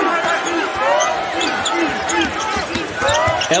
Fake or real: real